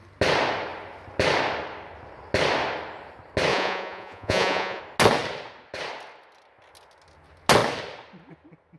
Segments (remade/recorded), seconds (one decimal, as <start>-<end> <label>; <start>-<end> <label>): 0.0-3.5 recorded; 3.5-4.8 remade; 4.8-8.8 recorded